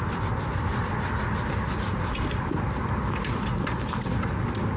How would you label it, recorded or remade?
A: recorded